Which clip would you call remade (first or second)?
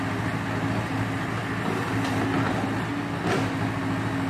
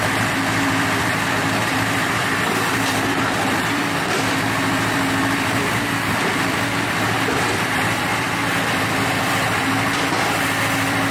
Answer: second